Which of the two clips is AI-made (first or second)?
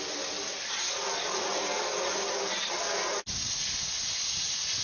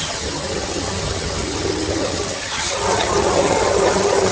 second